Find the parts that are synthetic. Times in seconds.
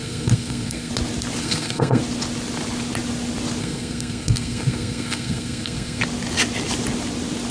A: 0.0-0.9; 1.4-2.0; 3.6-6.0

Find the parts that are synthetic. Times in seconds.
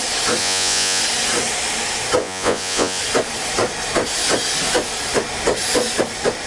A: 0.4-1.0; 2.2-3.0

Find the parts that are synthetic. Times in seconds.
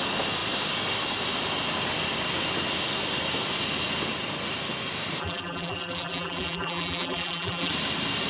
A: 5.2-7.7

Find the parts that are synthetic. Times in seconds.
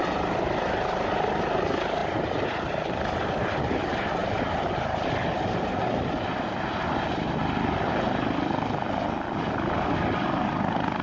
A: none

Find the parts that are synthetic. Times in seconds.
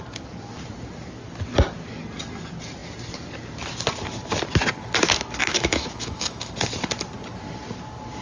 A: 5.4-6.5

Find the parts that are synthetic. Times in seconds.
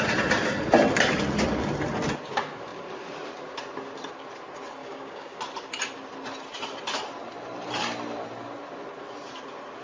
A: 4.8-5.4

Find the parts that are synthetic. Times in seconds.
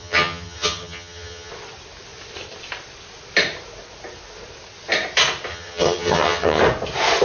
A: 0.0-1.5; 5.5-6.6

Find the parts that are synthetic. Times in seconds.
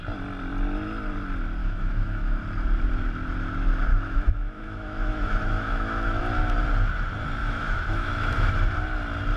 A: 1.6-2.4; 3.9-6.2; 7.4-8.5